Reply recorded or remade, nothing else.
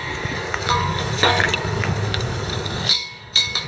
remade